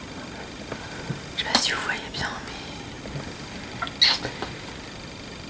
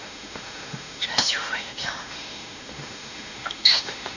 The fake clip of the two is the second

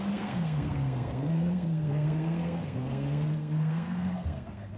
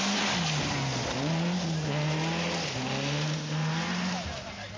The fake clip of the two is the first